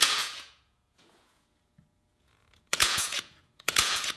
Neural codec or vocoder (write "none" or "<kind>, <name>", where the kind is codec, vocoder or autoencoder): vocoder, Vocos